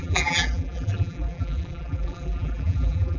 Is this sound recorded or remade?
remade